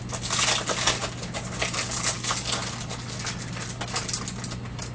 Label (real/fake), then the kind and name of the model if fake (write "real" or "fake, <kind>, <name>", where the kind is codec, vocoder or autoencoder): real